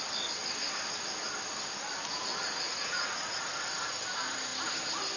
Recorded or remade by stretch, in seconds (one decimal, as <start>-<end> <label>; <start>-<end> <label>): 0.0-2.3 recorded; 2.3-3.4 remade; 3.4-5.2 recorded